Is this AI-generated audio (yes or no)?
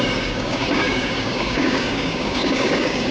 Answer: yes